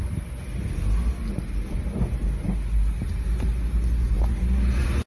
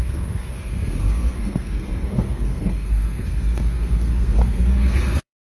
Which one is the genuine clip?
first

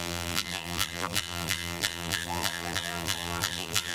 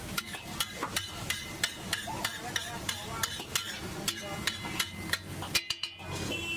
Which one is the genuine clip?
second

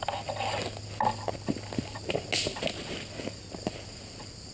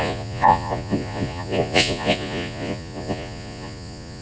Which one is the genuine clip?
first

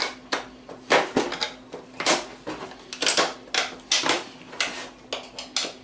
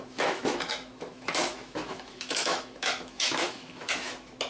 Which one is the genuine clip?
first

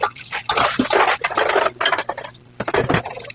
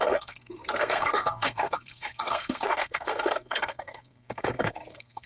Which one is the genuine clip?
first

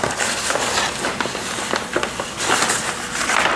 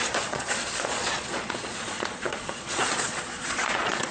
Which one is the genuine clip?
first